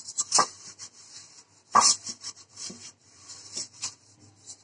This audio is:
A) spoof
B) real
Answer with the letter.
B